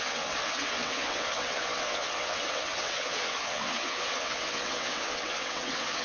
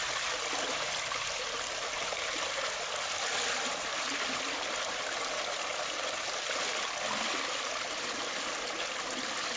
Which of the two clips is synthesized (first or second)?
first